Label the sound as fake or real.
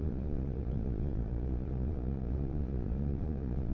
fake